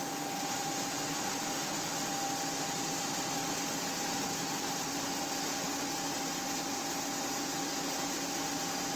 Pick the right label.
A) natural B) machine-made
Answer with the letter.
A